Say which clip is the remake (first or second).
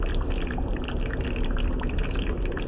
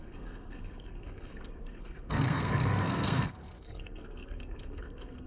second